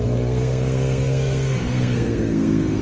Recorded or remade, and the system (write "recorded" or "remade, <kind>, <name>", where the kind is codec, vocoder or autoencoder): remade, codec, SNAC